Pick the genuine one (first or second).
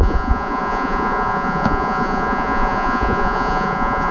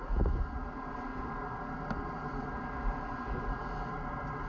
second